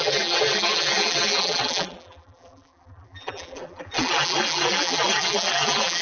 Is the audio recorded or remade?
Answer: remade